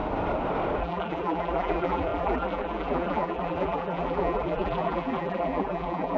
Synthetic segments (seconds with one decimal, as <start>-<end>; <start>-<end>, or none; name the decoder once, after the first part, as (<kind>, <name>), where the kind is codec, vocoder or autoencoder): 0.8-6.2 (vocoder, BigVGAN v2)

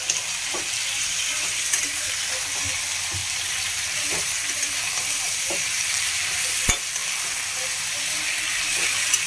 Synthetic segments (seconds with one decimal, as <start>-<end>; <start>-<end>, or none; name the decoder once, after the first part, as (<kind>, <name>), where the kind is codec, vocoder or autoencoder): 0.4-2.2 (vocoder, BigVGAN v2); 3.2-6.4

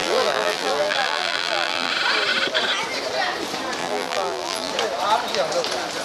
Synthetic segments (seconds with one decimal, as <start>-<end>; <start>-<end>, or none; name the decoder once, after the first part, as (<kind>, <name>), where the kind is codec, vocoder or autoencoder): 0.0-1.9 (vocoder, BigVGAN v2); 3.8-4.7

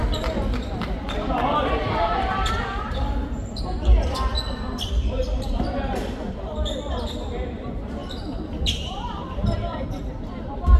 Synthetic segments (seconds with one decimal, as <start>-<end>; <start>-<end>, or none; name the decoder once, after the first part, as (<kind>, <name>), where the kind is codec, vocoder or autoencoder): 0.0-10.8 (vocoder, BigVGAN v2)

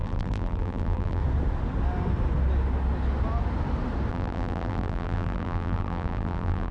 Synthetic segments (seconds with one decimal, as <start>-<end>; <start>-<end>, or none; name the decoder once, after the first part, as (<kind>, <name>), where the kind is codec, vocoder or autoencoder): 0.0-1.2 (vocoder, BigVGAN v2); 4.1-6.7

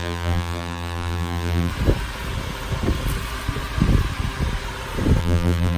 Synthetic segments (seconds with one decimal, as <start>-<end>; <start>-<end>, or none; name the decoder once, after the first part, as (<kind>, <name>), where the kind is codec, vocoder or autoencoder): 0.0-1.7 (vocoder, BigVGAN v2); 5.2-5.8

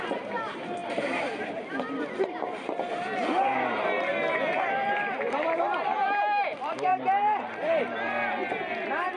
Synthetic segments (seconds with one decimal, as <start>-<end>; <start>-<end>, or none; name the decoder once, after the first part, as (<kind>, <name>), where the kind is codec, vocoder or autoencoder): 0.8-1.5 (vocoder, BigVGAN v2); 6.9-7.5

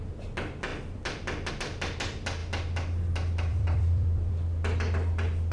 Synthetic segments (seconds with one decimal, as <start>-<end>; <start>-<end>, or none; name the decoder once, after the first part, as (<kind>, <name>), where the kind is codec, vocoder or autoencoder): 3.5-4.3 (vocoder, BigVGAN v2)